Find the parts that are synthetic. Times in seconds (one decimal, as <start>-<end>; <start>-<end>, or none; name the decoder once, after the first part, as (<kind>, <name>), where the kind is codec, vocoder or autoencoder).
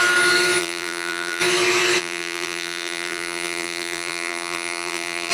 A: 0.6-1.4 (vocoder, BigVGAN v2); 2.0-5.3